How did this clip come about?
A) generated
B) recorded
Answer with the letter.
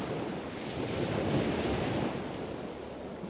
B